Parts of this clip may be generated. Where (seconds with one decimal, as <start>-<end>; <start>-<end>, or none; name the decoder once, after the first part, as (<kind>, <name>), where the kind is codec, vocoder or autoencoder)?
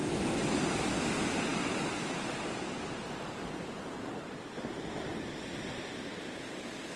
1.5-5.7 (vocoder, BigVGAN v2)